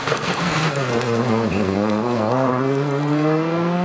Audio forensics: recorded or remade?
remade